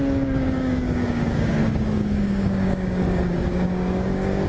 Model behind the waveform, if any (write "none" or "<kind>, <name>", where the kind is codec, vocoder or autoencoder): codec, DAC